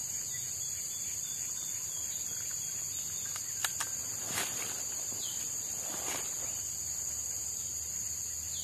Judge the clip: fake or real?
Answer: real